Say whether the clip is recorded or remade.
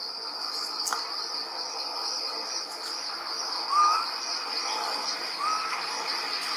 recorded